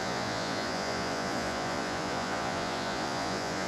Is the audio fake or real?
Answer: fake